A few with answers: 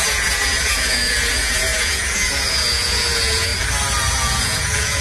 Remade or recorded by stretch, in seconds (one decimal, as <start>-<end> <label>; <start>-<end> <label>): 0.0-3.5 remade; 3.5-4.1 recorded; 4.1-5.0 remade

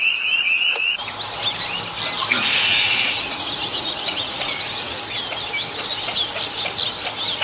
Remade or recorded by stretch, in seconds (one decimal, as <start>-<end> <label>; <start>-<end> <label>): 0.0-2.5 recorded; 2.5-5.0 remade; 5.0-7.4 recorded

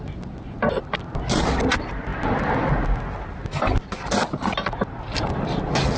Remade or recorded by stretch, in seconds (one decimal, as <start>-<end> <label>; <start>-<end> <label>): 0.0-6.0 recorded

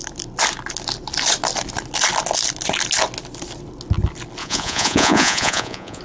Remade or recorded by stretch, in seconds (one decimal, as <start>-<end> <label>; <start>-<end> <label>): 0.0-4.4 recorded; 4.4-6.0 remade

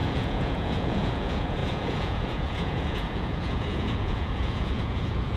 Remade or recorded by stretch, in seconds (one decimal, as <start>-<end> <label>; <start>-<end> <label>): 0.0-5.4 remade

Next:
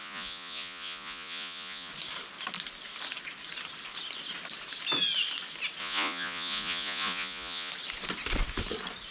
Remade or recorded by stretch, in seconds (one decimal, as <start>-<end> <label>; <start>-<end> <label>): 0.0-1.9 remade; 1.9-5.8 recorded; 5.8-7.7 remade; 7.7-9.1 recorded